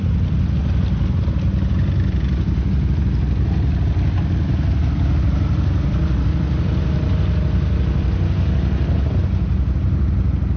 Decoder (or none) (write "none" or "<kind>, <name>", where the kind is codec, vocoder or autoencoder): none